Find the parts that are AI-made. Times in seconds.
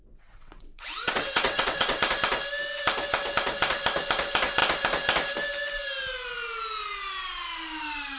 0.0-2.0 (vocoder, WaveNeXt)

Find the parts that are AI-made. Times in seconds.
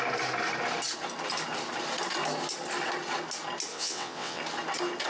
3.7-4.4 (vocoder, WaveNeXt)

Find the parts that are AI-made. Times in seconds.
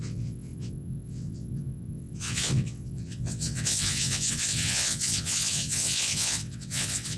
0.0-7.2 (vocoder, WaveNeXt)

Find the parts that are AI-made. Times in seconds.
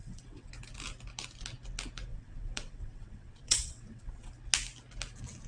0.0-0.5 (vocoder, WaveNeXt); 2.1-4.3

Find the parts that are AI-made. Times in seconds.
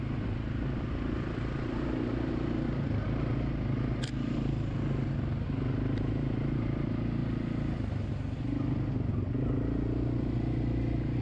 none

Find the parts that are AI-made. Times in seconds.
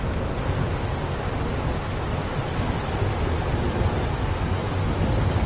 none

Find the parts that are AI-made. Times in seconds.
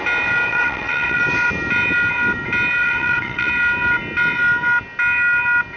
0.5-1.2 (vocoder, WaveNeXt); 2.8-3.5